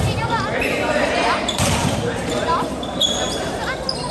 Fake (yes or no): yes